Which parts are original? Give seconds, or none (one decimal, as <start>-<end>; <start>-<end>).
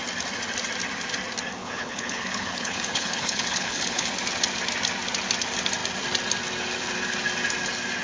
0.0-1.6; 4.1-8.0